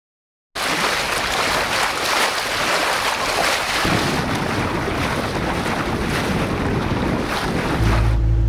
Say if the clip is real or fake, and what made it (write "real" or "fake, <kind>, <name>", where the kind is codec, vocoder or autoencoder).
real